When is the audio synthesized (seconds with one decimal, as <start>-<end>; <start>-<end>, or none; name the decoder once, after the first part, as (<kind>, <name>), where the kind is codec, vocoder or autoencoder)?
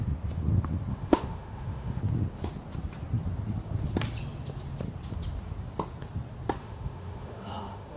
0.9-2.0 (autoencoder, DAC-VAE); 6.6-8.0